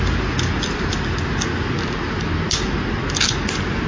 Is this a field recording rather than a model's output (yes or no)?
yes